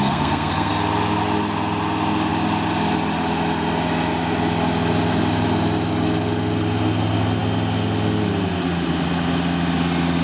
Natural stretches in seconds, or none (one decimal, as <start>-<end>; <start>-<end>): 0.7-10.2